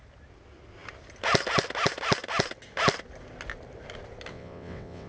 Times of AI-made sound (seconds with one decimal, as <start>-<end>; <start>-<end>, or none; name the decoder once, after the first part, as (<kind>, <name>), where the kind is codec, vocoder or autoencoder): 4.3-5.1 (vocoder, WaveNeXt)